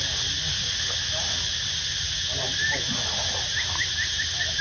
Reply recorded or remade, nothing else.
recorded